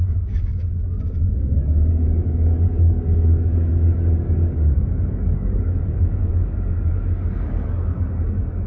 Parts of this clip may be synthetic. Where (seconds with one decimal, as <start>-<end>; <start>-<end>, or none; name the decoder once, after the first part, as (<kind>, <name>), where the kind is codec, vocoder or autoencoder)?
0.0-8.7 (codec, DAC)